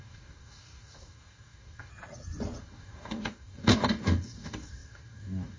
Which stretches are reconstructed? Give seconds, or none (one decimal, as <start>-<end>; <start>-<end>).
0.0-1.9; 2.6-5.6